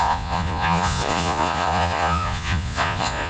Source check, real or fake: fake